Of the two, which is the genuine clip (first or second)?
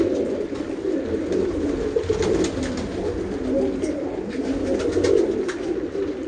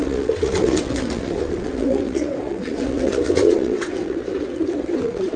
first